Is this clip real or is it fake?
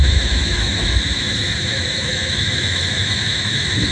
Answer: fake